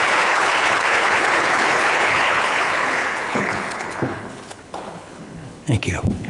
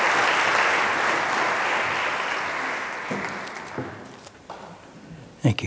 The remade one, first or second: first